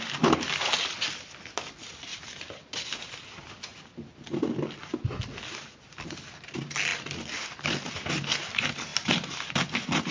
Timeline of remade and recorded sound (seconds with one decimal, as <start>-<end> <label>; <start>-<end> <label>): 0.0-6.9 recorded; 6.9-7.9 remade; 7.9-8.9 recorded; 8.9-10.1 remade

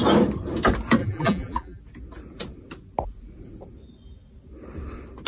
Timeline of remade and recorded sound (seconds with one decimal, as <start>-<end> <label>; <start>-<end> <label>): 0.0-1.0 recorded; 1.0-1.8 remade; 1.8-5.3 recorded